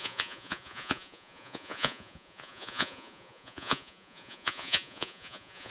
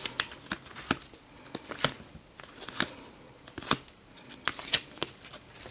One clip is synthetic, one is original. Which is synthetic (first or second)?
first